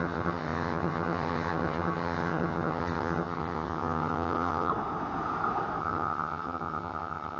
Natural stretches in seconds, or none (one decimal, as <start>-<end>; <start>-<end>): 4.7-5.8